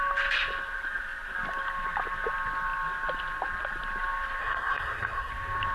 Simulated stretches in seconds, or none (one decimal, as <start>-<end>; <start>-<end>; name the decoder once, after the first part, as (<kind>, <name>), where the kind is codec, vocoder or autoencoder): 4.4-5.3 (codec, SNAC)